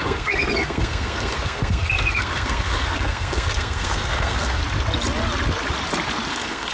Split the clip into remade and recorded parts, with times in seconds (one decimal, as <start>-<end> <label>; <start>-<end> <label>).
0.0-4.6 remade; 4.6-6.3 recorded; 6.3-6.7 remade